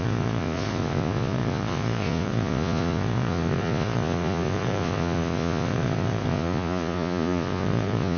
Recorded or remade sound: remade